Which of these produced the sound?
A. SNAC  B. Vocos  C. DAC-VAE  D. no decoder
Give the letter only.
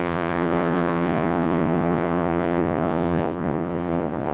B